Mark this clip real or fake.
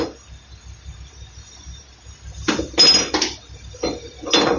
real